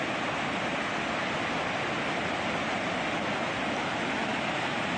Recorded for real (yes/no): yes